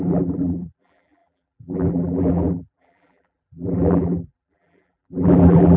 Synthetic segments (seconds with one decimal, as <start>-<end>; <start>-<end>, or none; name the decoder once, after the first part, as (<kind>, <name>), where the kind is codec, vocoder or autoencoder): 0.0-5.8 (vocoder, BigVGAN v2)